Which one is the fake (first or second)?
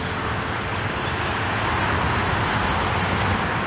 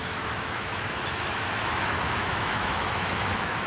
second